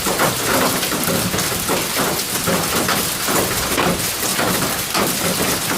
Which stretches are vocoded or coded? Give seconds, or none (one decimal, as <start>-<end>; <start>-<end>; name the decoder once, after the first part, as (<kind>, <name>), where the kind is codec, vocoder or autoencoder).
none